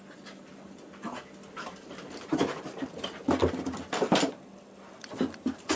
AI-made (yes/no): no